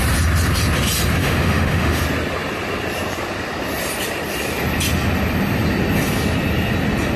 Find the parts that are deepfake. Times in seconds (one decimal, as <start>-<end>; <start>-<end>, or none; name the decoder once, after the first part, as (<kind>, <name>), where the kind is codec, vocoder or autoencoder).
1.2-2.0 (autoencoder, DAC-VAE)